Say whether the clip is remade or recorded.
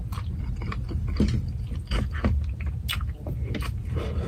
recorded